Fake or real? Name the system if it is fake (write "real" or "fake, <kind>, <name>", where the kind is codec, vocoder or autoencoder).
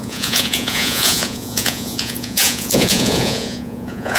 fake, vocoder, Vocos